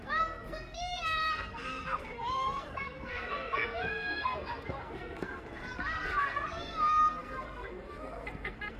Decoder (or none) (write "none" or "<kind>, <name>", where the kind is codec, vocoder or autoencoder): codec, SNAC